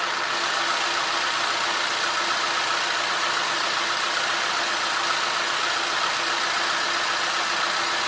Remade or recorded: recorded